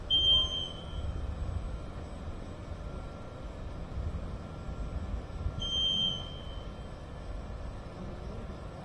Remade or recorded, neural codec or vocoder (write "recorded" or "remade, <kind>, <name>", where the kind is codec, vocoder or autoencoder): recorded